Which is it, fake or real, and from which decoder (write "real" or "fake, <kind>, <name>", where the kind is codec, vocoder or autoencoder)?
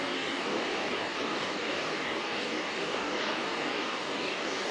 fake, codec, DAC